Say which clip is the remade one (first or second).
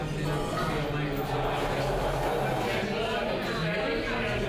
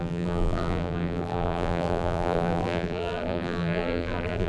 second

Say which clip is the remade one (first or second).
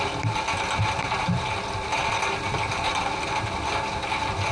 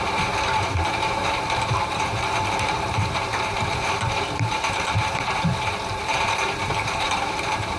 second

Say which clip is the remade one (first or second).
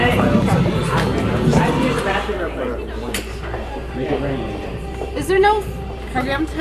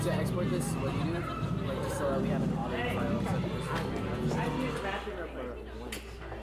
first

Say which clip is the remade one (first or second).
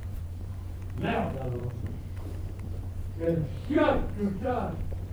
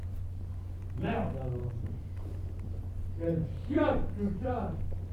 first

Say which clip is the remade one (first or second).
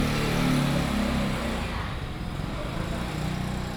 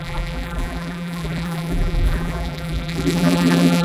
second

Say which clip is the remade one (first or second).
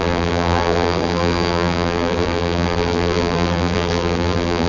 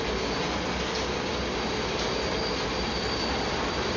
first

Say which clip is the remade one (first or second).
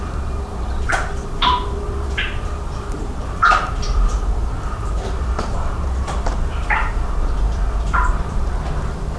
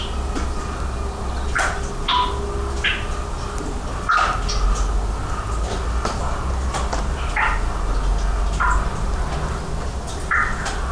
first